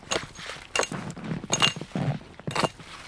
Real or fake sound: real